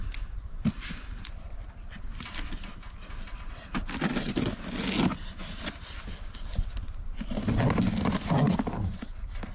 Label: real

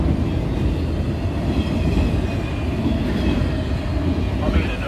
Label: real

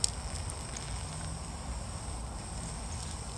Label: real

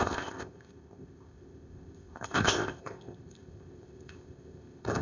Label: fake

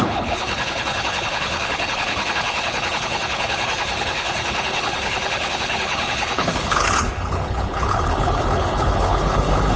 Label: fake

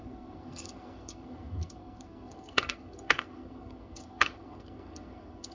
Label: fake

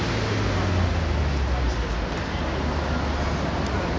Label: real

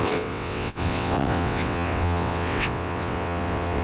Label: fake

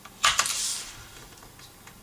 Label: fake